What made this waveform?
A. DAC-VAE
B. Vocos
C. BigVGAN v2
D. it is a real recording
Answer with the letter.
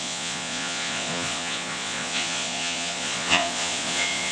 B